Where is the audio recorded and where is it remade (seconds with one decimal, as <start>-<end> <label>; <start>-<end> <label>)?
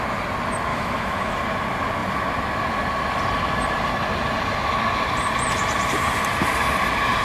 0.0-0.7 recorded; 0.7-1.3 remade; 1.3-7.2 recorded